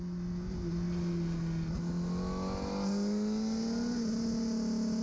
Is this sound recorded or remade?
recorded